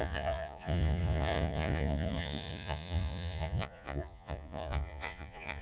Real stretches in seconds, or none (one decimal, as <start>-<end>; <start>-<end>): none